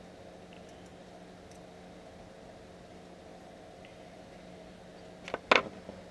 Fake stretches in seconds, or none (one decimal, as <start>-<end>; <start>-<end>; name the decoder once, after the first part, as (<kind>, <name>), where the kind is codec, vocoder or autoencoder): 3.3-4.3 (vocoder, BigVGAN v2)